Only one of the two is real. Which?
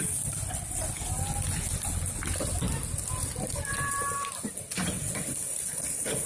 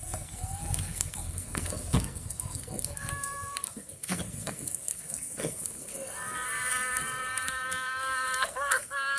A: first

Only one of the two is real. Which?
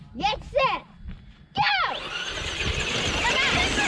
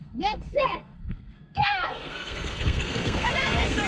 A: first